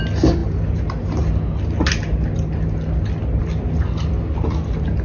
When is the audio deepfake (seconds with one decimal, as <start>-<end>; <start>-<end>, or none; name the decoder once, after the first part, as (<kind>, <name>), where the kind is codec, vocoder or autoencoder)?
none